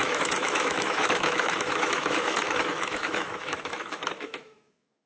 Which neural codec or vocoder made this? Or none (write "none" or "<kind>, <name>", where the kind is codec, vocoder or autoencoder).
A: autoencoder, DAC-VAE